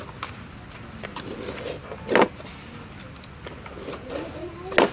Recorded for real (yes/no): yes